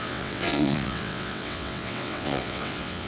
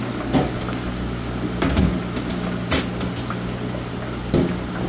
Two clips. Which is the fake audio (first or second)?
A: first